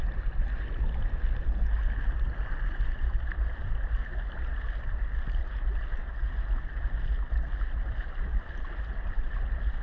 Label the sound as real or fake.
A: real